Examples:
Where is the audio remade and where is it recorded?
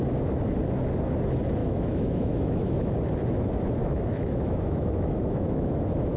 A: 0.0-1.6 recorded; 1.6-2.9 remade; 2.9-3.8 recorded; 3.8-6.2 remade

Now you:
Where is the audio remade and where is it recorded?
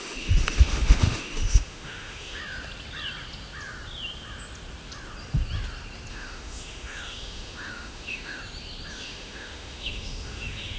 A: 0.0-2.4 remade; 2.4-6.1 recorded; 6.1-8.4 remade; 8.4-8.9 recorded; 8.9-10.8 remade